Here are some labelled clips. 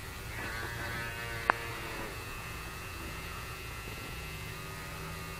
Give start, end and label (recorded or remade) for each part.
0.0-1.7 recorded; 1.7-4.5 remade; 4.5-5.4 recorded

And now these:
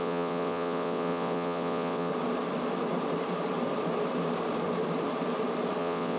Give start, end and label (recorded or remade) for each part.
0.0-2.1 remade; 2.1-5.8 recorded; 5.8-6.2 remade

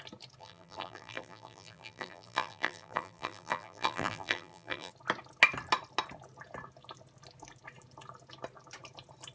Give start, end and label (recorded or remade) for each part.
0.0-0.4 recorded; 0.4-4.9 remade; 4.9-9.3 recorded